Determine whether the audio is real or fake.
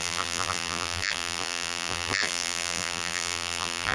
fake